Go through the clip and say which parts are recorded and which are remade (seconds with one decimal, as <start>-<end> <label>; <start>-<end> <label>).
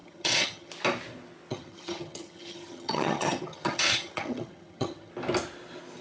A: 0.0-0.7 remade; 0.7-1.5 recorded; 1.5-5.1 remade; 5.1-6.0 recorded